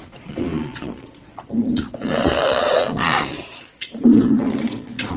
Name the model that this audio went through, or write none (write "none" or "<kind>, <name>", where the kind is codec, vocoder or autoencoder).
vocoder, Vocos